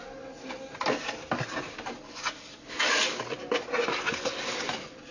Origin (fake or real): real